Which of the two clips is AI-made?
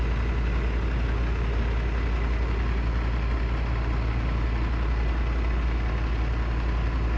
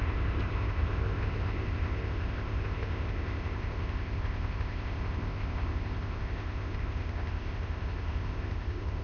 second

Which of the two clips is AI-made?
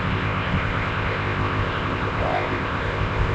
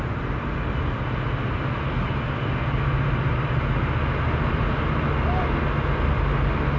first